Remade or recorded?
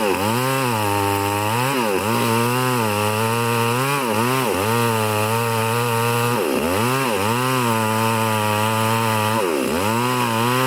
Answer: recorded